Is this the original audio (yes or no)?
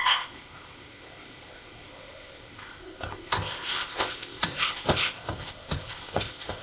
no